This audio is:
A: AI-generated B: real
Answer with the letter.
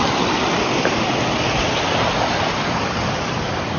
B